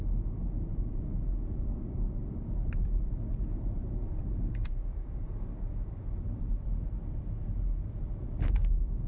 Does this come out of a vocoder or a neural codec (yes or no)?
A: yes